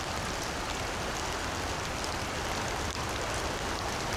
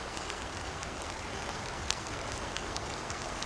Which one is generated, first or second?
second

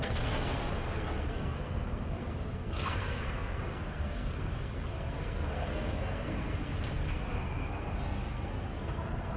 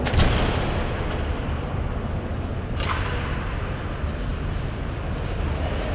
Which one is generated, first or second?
first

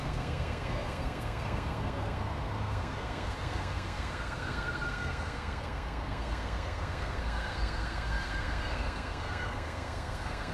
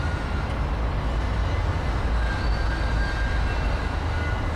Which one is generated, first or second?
first